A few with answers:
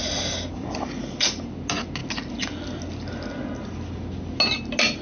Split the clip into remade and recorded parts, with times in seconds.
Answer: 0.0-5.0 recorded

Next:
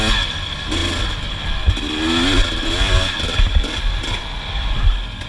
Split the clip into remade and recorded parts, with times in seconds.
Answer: 0.0-5.3 recorded

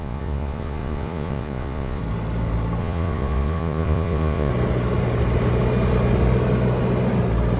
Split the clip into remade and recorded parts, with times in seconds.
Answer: 0.0-2.0 remade; 2.0-2.8 recorded; 2.8-4.5 remade; 4.5-7.6 recorded